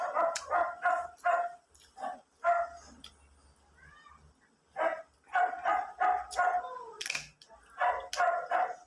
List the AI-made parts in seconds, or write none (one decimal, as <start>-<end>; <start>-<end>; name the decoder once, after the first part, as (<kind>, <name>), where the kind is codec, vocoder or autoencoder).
none

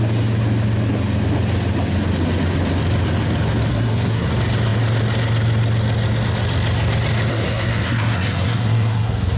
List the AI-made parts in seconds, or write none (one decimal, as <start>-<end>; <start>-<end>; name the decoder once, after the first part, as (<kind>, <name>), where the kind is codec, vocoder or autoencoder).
3.7-4.3 (codec, SNAC); 7.3-9.4